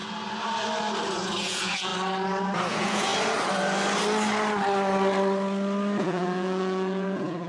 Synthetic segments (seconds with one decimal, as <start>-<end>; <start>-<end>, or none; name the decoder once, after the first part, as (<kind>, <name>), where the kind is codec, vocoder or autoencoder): 1.4-1.9 (vocoder, Vocos); 2.7-3.1; 6.0-7.5